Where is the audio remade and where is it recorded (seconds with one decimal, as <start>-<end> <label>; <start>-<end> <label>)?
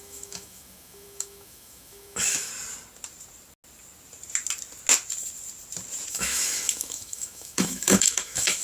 0.0-2.5 remade; 2.5-6.1 recorded; 6.1-8.6 remade